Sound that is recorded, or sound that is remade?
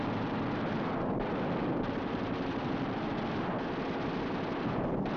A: recorded